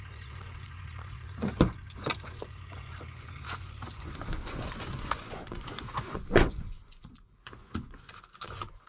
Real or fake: fake